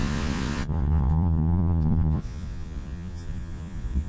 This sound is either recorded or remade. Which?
remade